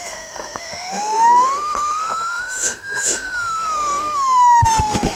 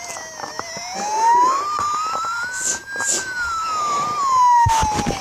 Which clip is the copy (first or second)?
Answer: first